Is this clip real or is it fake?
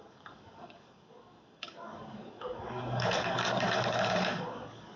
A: fake